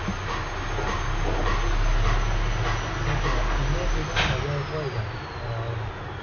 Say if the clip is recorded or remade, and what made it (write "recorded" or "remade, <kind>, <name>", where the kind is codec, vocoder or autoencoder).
recorded